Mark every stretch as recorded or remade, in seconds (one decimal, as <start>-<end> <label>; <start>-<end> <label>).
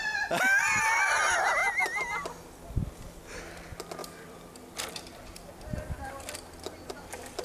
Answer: 0.0-1.6 remade; 1.6-2.3 recorded; 2.3-7.4 remade